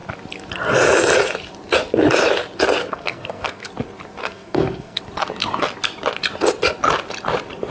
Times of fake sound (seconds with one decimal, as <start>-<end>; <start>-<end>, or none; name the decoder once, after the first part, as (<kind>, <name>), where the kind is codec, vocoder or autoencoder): 2.8-3.7 (codec, SNAC); 4.2-5.0